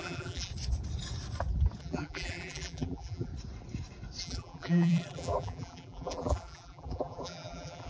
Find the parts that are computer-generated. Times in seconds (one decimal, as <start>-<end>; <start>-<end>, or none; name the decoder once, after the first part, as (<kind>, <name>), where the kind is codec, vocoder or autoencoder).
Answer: 0.0-0.5 (vocoder, BigVGAN v2); 1.8-3.3; 4.2-7.9